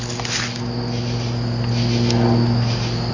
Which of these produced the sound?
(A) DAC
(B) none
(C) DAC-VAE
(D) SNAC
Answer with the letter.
B